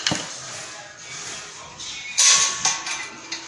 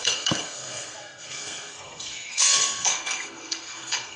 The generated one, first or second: second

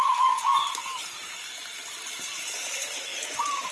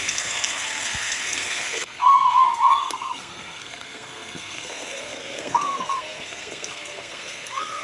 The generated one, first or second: second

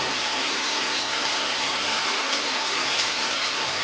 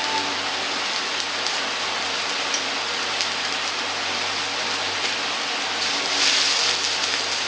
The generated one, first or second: first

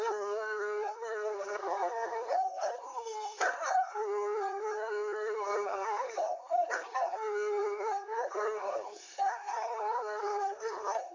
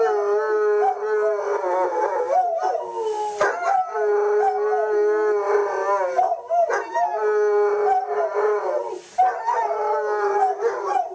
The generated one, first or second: first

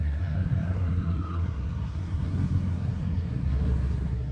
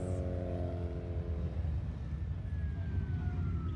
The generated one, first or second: first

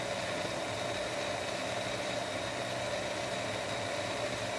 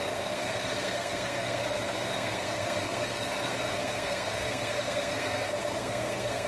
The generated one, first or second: second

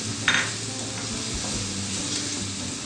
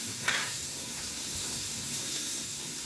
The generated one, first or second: second